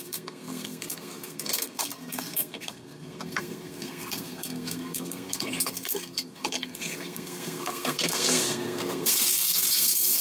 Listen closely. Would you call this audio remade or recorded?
remade